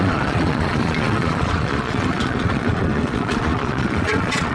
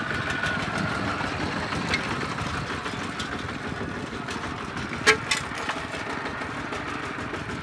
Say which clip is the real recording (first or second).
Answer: second